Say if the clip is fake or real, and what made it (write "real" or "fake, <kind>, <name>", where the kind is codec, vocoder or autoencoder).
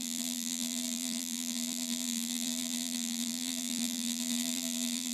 fake, vocoder, BigVGAN v2